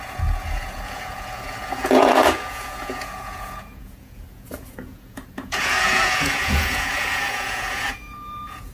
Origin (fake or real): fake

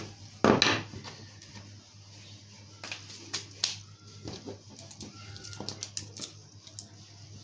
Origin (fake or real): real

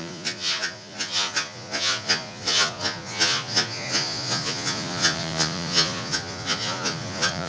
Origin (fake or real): fake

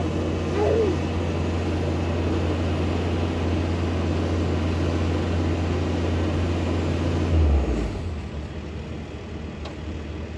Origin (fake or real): real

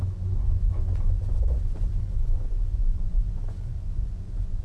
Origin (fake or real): fake